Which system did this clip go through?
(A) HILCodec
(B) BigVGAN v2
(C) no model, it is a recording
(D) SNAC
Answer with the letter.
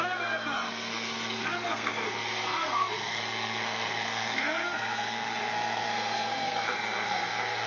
D